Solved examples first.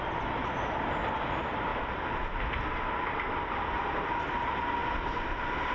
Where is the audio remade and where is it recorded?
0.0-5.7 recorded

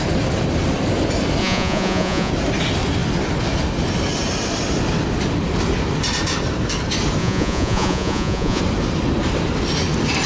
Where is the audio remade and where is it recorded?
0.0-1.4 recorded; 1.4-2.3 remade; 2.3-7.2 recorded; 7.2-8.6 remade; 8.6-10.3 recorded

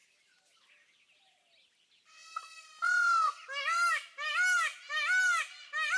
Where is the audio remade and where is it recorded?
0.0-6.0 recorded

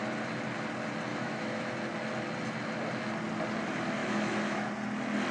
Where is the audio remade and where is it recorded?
0.0-1.1 recorded; 1.1-1.7 remade; 1.7-4.0 recorded; 4.0-4.7 remade; 4.7-5.3 recorded

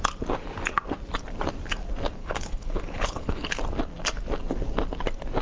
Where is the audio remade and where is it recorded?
0.0-2.2 recorded; 2.2-3.6 remade; 3.6-5.4 recorded